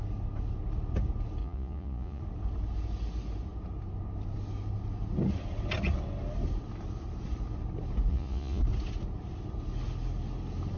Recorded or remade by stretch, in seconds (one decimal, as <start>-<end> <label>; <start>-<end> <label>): 0.0-1.4 recorded; 1.4-2.2 remade; 2.2-8.1 recorded; 8.1-8.6 remade; 8.6-10.8 recorded